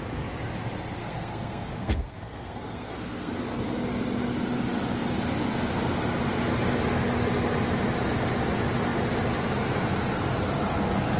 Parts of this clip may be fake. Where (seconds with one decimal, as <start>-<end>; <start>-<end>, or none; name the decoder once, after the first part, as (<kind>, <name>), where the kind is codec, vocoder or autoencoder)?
1.0-3.3 (codec, SNAC)